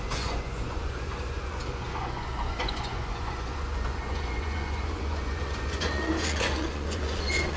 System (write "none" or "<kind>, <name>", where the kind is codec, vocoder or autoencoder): vocoder, Vocos